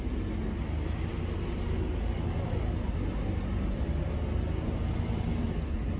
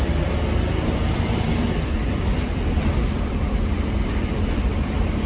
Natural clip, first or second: first